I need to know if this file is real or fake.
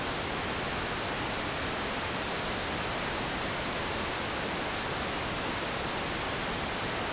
real